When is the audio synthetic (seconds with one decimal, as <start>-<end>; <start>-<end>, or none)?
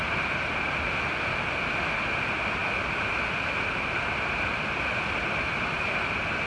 none